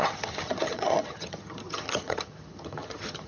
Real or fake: fake